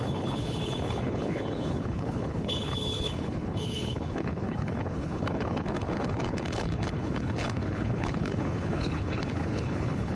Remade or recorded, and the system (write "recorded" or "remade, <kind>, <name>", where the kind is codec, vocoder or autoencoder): remade, codec, HILCodec